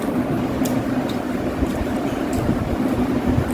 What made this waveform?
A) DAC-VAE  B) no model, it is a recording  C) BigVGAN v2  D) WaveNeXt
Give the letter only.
C